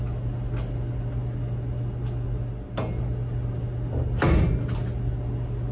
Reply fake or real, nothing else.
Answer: real